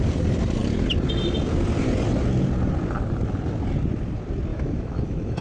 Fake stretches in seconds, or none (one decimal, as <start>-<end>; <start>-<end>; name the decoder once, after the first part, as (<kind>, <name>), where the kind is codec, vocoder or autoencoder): 4.5-5.4 (autoencoder, DAC-VAE)